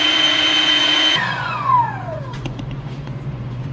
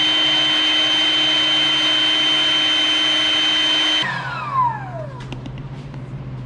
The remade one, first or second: first